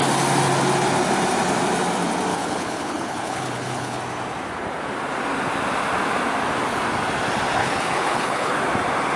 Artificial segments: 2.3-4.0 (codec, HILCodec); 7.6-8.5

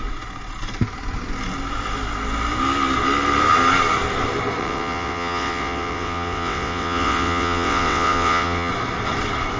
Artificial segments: 4.6-8.7 (vocoder, WaveNeXt)

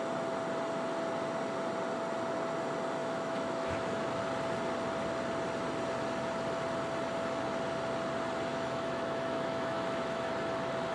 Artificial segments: 3.0-4.2 (autoencoder, DAC-VAE); 8.5-10.3

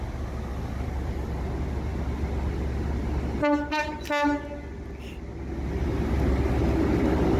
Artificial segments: 0.5-1.4 (vocoder, BigVGAN v2)

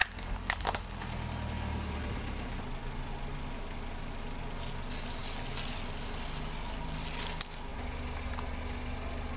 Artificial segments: none

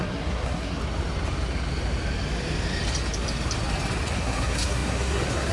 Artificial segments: 0.0-0.8 (codec, SNAC); 4.1-5.5

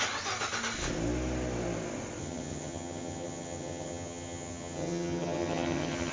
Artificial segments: 2.2-6.1 (vocoder, HiFi-GAN)

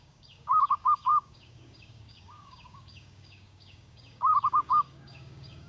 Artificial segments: 0.0-5.7 (codec, DAC)